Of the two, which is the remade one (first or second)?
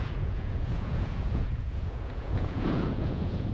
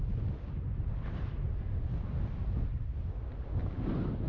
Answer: first